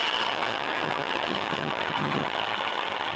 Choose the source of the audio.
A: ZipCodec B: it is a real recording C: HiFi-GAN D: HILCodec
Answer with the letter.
C